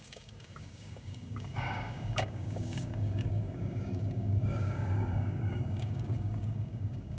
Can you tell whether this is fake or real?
fake